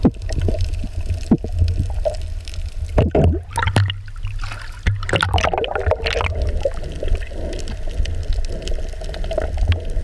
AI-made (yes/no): no